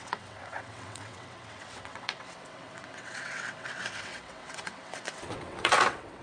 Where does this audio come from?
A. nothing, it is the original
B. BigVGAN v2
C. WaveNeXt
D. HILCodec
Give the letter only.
C